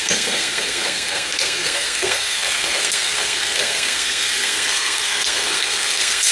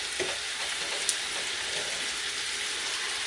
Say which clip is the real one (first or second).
second